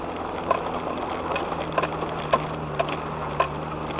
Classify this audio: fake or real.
real